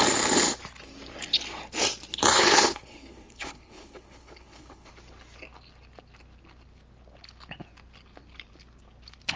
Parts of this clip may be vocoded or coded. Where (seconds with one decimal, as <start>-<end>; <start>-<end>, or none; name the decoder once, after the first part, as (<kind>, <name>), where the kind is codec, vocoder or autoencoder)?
2.3-4.9 (codec, HILCodec)